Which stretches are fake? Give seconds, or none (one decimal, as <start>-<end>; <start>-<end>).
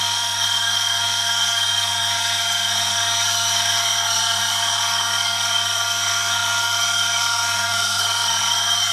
0.0-8.9